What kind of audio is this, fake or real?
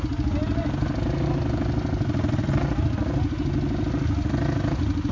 real